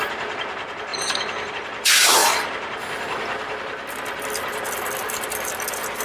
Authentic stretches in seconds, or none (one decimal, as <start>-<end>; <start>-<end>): none